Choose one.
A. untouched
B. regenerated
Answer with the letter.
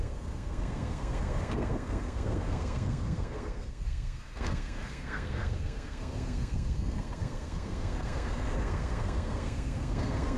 B